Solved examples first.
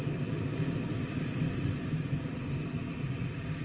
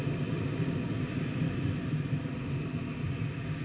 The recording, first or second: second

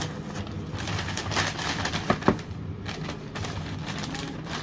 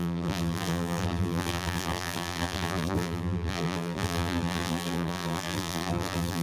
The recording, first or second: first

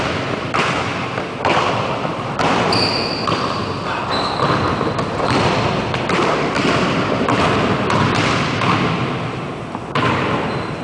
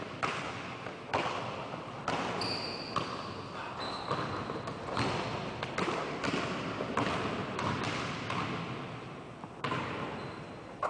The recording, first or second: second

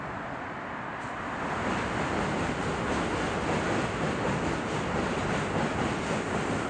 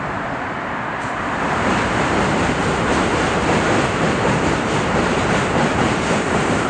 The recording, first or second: first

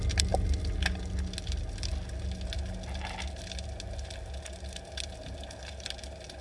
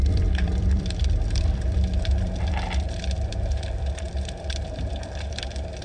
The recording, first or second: first